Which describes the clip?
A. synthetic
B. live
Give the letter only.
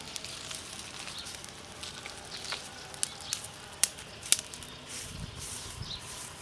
B